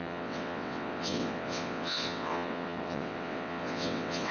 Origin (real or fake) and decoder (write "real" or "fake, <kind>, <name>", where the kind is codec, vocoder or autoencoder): fake, vocoder, WaveNeXt